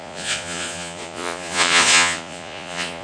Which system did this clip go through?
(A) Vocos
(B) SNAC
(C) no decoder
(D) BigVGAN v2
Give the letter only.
A